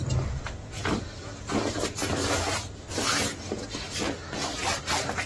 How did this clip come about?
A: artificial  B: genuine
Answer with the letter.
B